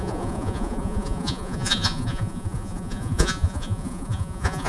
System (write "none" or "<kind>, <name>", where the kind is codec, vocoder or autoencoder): vocoder, Vocos